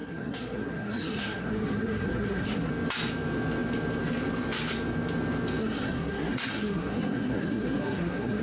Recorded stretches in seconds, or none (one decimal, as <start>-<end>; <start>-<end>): 2.7-5.6